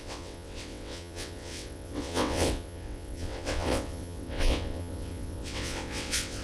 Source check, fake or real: fake